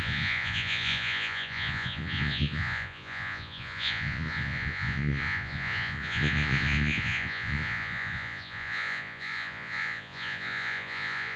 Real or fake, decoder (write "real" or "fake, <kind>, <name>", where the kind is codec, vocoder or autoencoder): fake, vocoder, Vocos